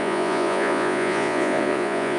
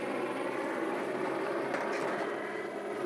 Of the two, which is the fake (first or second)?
first